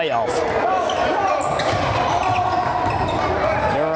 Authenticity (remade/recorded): recorded